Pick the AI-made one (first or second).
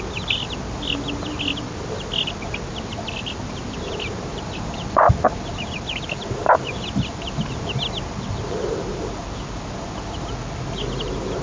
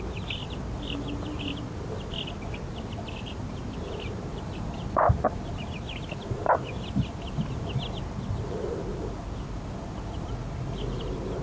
second